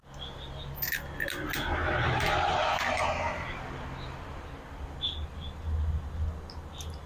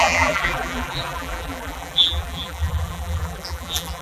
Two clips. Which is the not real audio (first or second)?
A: second